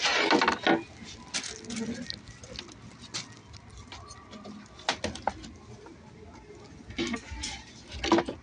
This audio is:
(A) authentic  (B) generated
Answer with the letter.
A